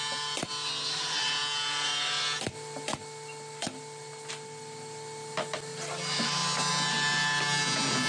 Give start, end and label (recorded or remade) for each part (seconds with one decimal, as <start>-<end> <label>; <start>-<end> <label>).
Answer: 0.0-8.1 recorded